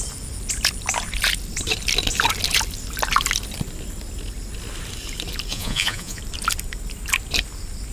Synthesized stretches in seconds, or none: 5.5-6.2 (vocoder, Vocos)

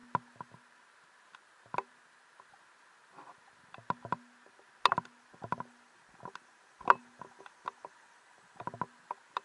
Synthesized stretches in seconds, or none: none

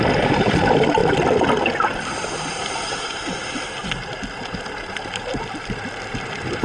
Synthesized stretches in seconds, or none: none

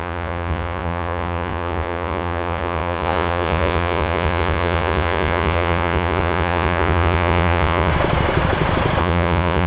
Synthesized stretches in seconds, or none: 0.0-7.9 (vocoder, Vocos); 9.0-9.7

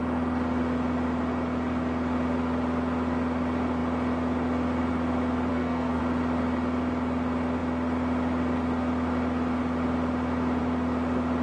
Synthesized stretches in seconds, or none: 5.5-6.0 (codec, SNAC)